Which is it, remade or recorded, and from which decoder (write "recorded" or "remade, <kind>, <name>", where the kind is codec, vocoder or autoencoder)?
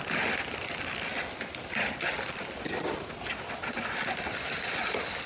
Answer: recorded